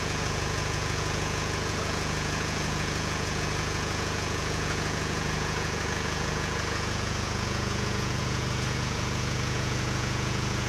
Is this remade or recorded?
remade